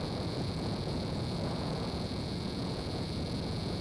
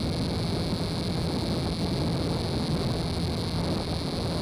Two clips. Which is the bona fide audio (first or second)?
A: second